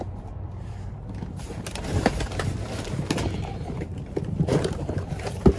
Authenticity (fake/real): fake